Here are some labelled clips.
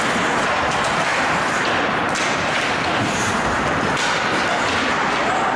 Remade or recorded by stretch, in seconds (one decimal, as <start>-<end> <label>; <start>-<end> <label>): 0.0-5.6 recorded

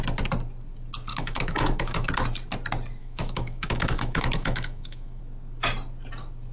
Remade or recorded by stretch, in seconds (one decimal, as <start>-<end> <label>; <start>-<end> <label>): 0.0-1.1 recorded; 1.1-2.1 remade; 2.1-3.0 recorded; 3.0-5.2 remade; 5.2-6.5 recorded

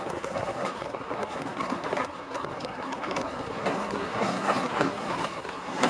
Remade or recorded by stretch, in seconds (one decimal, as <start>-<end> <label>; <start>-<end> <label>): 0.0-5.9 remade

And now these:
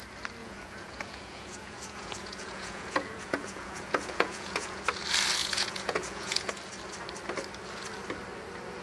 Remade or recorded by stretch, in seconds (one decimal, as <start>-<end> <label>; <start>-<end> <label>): 0.0-0.4 recorded; 0.4-4.8 remade; 4.8-5.4 recorded; 5.4-6.5 remade; 6.5-8.8 recorded